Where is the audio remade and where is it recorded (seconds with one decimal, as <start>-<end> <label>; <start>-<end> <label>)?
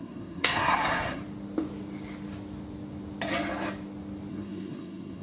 0.0-1.2 remade; 1.2-4.3 recorded; 4.3-5.2 remade